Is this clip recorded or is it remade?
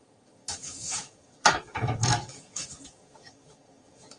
remade